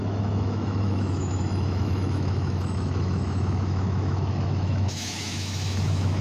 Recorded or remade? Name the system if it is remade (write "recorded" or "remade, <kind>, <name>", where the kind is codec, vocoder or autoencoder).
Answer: remade, autoencoder, DAC-VAE